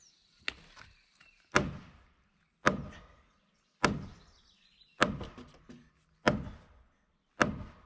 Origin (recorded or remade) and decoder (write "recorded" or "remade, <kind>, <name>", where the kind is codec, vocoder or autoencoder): recorded